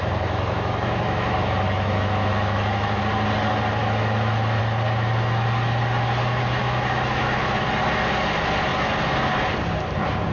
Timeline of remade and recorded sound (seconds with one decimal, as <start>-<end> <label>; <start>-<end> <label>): 0.0-3.0 remade; 3.0-3.8 recorded; 3.8-4.6 remade; 4.6-6.6 recorded; 6.6-7.4 remade; 7.4-10.3 recorded